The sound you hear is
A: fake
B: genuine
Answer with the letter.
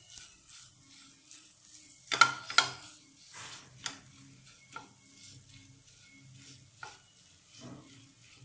B